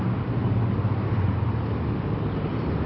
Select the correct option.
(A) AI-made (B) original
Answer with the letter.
B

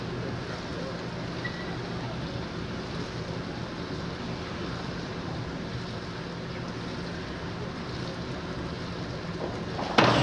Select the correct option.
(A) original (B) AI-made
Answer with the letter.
A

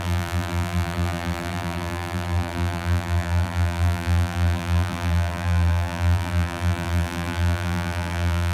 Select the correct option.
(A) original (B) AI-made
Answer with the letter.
B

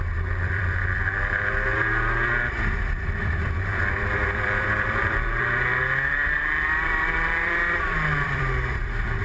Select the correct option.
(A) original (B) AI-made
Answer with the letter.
B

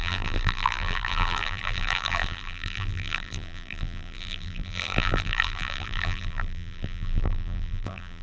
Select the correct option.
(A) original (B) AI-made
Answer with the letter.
B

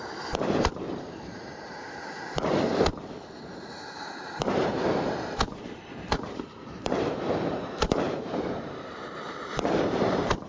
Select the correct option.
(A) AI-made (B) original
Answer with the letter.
A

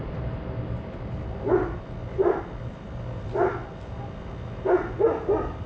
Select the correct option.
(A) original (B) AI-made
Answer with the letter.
A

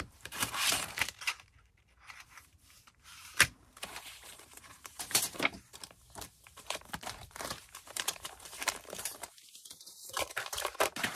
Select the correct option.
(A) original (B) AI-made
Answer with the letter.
B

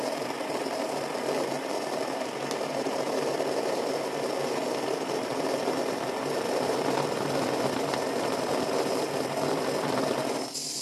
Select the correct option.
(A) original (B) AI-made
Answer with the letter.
B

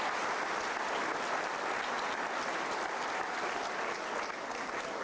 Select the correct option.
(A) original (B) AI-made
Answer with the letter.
A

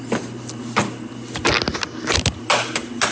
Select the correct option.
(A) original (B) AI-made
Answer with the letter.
A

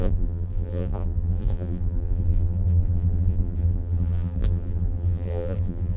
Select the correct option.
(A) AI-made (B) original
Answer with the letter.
A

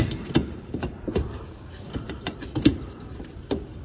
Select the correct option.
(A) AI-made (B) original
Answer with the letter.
A